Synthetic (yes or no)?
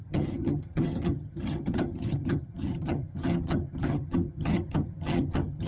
yes